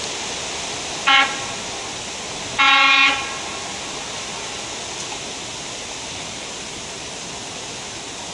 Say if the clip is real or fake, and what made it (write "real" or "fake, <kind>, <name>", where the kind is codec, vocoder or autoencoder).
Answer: real